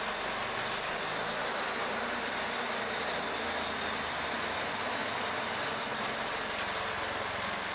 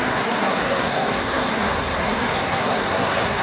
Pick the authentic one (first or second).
first